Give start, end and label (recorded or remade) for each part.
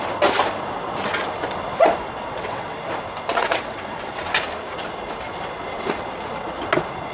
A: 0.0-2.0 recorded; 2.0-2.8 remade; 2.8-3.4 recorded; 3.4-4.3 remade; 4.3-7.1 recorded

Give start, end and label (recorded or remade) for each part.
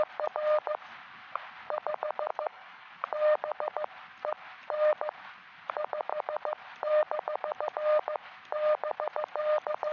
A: 0.0-2.3 recorded; 2.3-2.9 remade; 2.9-9.9 recorded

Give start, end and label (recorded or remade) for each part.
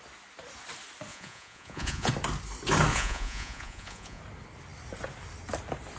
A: 0.0-1.1 recorded; 1.1-2.1 remade; 2.1-2.9 recorded; 2.9-4.2 remade; 4.2-6.0 recorded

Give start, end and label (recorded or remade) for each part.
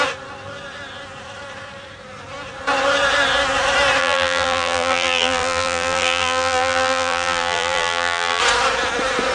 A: 0.0-4.0 recorded; 4.0-8.4 remade; 8.4-9.3 recorded